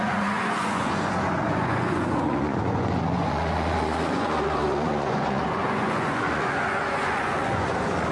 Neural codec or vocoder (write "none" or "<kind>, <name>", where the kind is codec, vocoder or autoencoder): vocoder, Vocos